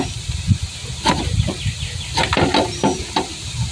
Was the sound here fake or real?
real